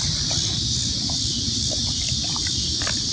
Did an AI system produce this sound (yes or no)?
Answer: yes